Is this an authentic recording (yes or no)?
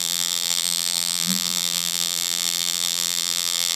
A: no